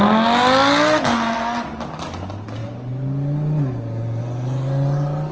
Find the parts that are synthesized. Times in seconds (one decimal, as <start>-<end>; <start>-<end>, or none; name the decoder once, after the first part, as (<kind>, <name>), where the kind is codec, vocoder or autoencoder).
none